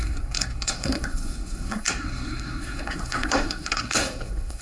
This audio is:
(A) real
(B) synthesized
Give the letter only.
B